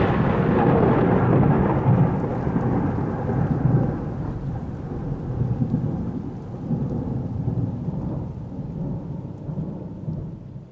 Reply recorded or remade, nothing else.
recorded